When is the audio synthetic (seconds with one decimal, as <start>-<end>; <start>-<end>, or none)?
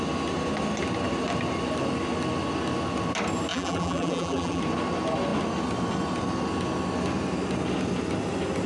3.5-4.6